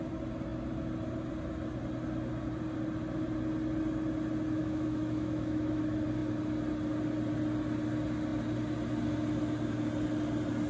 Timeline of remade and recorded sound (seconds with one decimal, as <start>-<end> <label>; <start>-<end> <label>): 0.0-4.6 recorded; 4.6-5.8 remade; 5.8-10.7 recorded